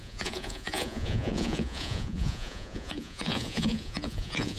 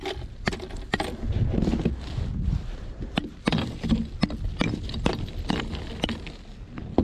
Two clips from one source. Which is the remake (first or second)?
first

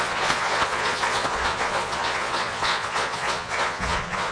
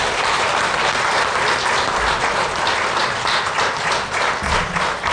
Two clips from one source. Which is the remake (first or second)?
first